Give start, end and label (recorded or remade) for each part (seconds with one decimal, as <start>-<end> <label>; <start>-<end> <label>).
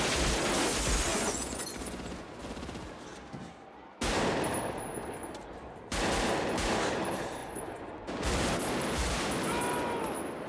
0.0-1.1 recorded; 1.1-2.4 remade; 2.4-7.4 recorded; 7.4-8.1 remade; 8.1-10.5 recorded